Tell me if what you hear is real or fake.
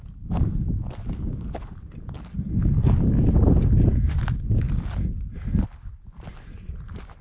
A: real